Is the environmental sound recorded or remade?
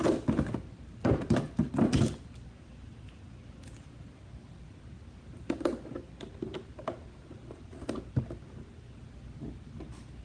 recorded